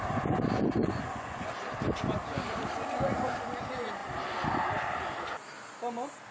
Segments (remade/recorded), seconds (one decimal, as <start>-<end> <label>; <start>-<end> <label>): 0.0-0.8 recorded; 0.8-1.5 remade; 1.5-6.3 recorded